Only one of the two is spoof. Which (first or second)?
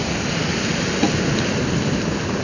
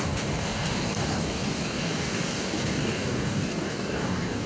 second